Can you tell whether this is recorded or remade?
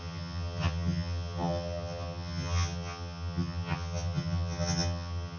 remade